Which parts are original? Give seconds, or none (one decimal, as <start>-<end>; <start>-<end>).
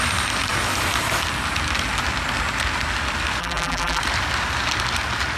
0.0-3.4; 4.0-5.4